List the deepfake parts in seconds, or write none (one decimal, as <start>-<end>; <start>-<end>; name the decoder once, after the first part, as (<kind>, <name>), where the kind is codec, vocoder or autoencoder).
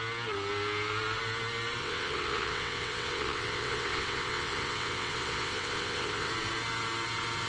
1.8-6.3 (vocoder, WaveNeXt)